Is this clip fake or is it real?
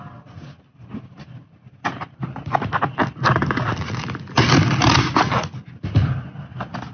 real